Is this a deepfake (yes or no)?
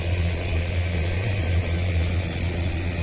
yes